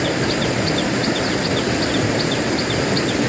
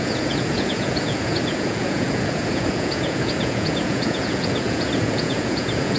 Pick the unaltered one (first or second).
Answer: first